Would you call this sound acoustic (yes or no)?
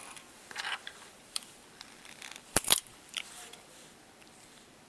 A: no